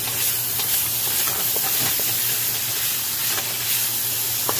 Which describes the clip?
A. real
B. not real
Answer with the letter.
A